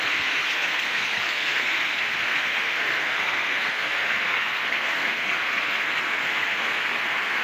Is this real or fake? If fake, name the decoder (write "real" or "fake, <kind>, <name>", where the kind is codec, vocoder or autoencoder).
fake, codec, SNAC